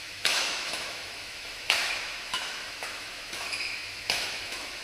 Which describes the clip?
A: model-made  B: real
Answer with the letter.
A